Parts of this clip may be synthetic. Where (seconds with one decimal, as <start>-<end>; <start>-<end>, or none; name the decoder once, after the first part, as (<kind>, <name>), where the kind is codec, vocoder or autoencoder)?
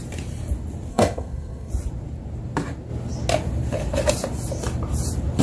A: 0.9-1.7 (codec, SNAC)